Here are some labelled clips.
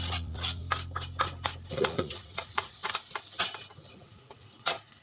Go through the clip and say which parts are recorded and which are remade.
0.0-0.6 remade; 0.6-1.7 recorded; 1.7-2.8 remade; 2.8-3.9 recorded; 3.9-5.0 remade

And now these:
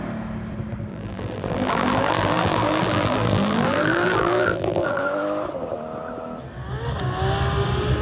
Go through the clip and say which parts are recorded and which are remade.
0.0-0.9 recorded; 0.9-5.0 remade; 5.0-8.0 recorded

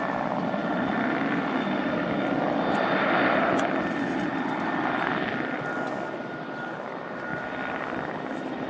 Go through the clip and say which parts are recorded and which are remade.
0.0-0.6 recorded; 0.6-2.0 remade; 2.0-8.7 recorded

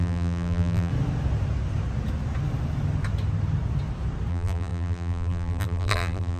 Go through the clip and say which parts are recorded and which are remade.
0.0-0.9 remade; 0.9-4.3 recorded; 4.3-6.4 remade

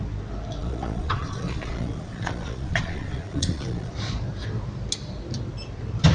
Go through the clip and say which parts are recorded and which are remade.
0.0-0.6 recorded; 0.6-3.9 remade; 3.9-6.1 recorded